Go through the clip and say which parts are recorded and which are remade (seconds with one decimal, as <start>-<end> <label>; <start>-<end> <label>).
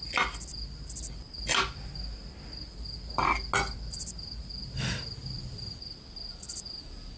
0.0-7.2 recorded